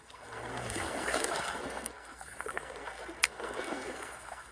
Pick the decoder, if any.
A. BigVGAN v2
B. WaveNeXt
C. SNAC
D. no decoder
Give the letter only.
C